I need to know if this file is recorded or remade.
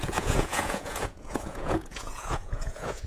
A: remade